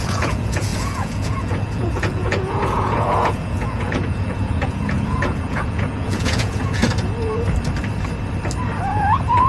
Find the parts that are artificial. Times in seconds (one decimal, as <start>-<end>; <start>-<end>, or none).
0.0-6.8; 8.9-9.5